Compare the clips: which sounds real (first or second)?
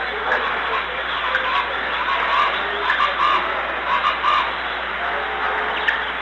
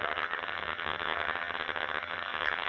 first